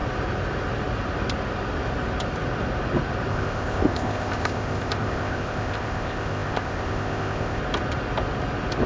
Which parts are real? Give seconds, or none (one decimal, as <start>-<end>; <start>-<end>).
0.0-3.3; 7.6-8.9